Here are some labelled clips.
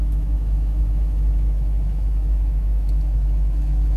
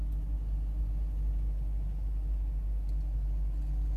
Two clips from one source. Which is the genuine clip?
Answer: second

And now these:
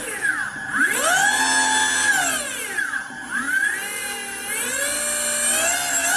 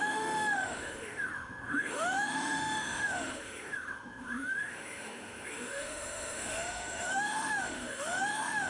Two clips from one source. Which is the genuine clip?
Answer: first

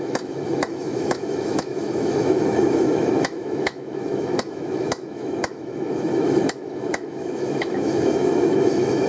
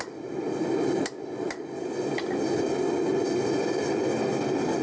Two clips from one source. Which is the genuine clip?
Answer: second